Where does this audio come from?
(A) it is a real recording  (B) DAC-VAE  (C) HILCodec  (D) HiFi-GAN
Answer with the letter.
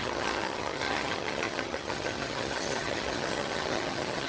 D